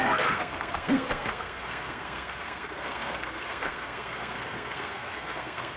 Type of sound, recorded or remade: remade